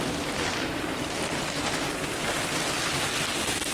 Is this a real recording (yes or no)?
yes